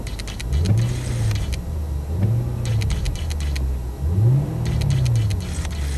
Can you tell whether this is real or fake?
real